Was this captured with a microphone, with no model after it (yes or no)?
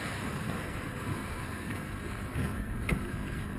no